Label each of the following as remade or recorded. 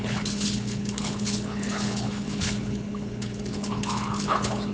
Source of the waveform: remade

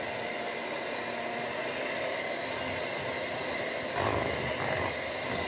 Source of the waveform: recorded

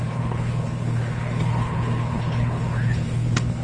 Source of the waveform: remade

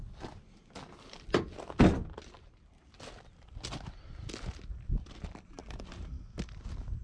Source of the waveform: recorded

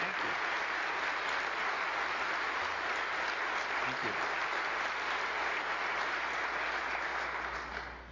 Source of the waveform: recorded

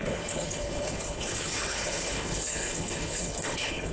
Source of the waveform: remade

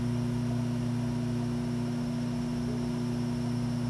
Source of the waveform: recorded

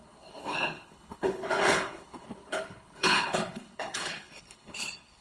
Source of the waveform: remade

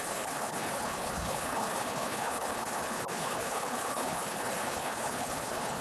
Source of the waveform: remade